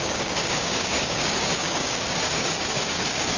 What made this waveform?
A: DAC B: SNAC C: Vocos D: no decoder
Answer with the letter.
A